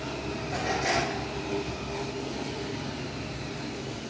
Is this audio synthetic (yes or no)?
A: no